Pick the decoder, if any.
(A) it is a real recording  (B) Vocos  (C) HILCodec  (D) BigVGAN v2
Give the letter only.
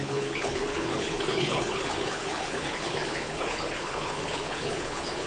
C